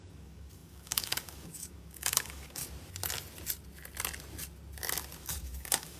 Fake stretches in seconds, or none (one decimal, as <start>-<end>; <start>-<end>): 0.0-2.6; 5.2-6.0